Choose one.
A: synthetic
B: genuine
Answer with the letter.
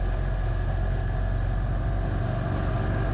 B